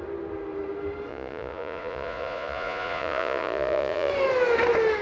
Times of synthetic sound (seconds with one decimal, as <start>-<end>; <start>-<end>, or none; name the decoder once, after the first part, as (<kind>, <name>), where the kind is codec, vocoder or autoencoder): 1.1-4.1 (vocoder, Vocos)